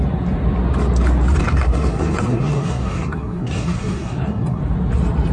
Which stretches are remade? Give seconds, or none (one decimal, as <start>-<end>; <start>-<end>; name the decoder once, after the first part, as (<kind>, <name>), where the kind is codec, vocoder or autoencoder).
1.4-4.6 (codec, SNAC)